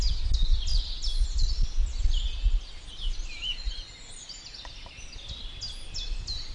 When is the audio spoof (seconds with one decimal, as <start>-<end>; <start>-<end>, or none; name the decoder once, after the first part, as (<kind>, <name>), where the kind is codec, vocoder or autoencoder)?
none